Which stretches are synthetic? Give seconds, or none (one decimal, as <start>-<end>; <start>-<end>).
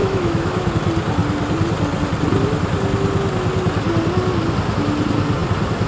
0.0-0.7